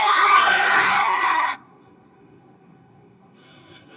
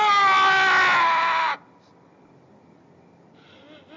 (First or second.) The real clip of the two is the second